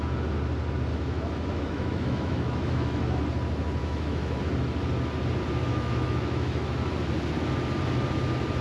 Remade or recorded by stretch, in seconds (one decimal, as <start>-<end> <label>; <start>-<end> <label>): 0.0-0.9 recorded; 0.9-3.2 remade; 3.2-3.8 recorded; 3.8-4.4 remade; 4.4-5.7 recorded; 5.7-6.9 remade; 6.9-8.6 recorded